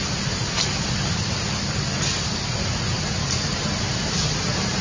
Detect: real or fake real